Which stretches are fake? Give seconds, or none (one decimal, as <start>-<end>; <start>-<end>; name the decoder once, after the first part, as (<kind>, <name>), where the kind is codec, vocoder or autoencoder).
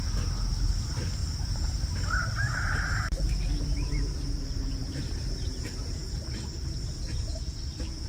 1.2-5.6 (vocoder, BigVGAN v2)